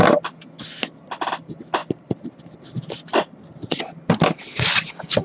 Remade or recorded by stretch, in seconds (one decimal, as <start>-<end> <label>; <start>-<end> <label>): 0.0-3.1 recorded; 3.1-5.2 remade